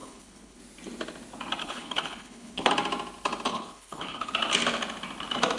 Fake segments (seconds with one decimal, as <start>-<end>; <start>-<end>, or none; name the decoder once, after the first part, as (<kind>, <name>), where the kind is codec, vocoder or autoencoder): 0.0-0.6 (codec, HILCodec); 1.6-2.7; 3.5-4.3

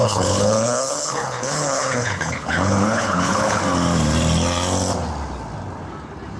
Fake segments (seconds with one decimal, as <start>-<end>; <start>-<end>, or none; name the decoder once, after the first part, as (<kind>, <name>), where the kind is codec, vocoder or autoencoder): 0.0-3.6 (codec, HILCodec)

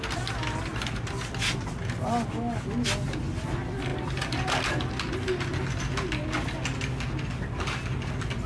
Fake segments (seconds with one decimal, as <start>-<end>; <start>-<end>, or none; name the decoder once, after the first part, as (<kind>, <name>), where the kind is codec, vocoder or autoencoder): none

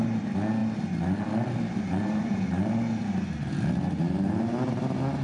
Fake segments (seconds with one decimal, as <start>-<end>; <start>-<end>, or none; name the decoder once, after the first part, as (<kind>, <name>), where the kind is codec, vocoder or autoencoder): none

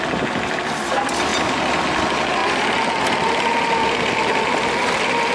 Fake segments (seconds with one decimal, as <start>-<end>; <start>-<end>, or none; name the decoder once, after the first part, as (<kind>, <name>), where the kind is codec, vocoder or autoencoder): none

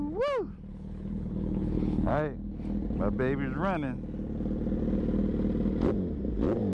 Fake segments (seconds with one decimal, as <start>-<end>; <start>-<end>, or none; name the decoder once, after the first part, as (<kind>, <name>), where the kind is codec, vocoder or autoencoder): 0.7-2.1 (codec, HILCodec)